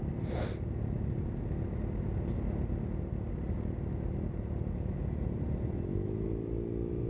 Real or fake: real